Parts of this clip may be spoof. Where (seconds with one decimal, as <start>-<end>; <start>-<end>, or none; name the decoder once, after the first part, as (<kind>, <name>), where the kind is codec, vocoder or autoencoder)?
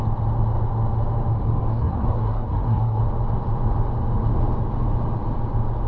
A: 1.7-3.0 (codec, SNAC)